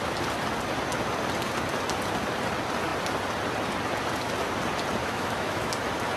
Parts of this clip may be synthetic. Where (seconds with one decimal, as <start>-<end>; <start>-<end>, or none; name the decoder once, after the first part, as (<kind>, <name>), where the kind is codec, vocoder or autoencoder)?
5.0-5.7 (autoencoder, DAC-VAE)